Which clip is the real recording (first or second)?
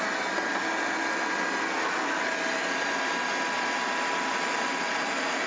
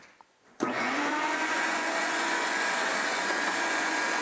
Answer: first